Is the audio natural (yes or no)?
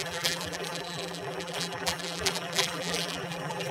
no